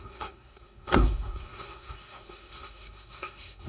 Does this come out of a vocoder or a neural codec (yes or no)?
yes